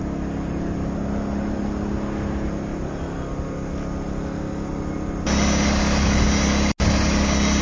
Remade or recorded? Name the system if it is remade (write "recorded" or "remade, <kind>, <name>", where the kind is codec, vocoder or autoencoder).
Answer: recorded